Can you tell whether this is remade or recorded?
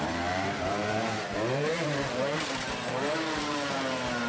remade